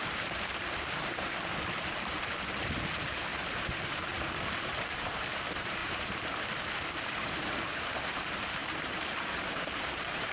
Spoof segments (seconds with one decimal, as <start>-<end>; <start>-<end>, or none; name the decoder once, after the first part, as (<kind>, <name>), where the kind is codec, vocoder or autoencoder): 0.0-10.3 (vocoder, BigVGAN v2)